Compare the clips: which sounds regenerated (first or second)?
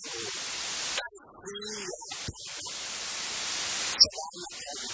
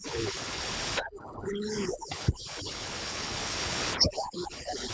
second